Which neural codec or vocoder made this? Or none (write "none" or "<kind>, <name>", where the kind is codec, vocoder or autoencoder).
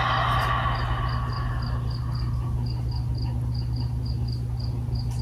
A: none